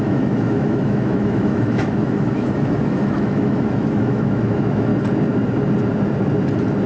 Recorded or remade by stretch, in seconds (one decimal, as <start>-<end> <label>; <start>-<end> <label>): 0.0-4.9 remade; 4.9-6.9 recorded